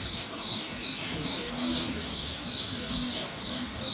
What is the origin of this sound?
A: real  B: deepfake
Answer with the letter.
B